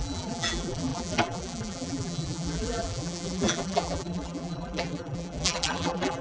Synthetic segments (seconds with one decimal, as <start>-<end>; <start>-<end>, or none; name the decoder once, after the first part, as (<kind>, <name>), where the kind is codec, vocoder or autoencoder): 0.0-6.2 (vocoder, BigVGAN v2)